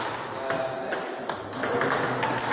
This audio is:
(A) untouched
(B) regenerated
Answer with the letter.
A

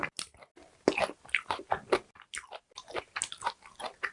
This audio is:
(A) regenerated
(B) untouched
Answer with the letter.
B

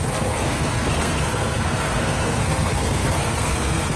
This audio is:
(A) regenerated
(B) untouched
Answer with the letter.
A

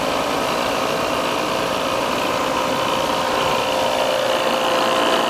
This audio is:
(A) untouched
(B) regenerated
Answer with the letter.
A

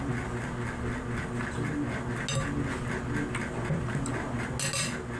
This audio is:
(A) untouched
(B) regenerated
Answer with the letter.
A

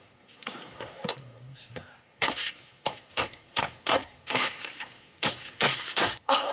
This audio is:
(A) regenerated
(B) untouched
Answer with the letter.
A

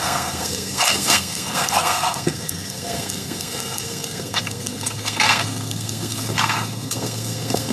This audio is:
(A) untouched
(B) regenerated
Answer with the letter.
B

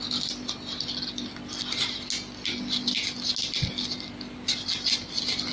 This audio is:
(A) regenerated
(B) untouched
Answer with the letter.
B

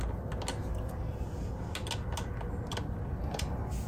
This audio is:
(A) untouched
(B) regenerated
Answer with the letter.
A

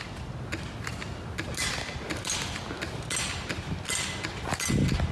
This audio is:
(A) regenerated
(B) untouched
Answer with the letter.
B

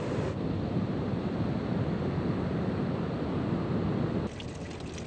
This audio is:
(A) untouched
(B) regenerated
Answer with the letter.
A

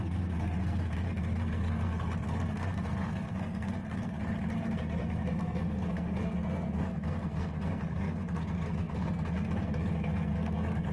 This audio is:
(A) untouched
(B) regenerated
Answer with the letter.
B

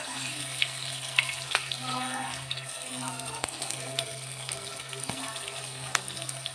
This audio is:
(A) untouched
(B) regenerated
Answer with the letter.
B